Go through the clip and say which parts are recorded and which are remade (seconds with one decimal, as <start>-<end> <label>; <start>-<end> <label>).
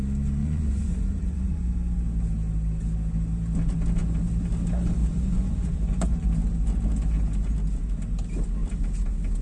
0.0-0.4 recorded; 0.4-1.6 remade; 1.6-5.0 recorded; 5.0-6.3 remade; 6.3-9.4 recorded